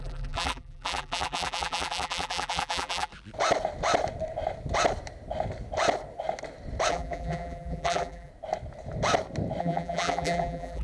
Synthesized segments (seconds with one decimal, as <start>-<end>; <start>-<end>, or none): 0.0-3.1; 6.9-8.3; 9.6-10.8